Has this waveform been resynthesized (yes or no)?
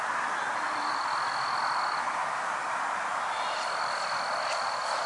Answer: no